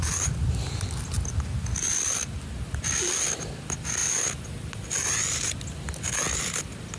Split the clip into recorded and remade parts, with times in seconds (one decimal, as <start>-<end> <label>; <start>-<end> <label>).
0.0-7.0 recorded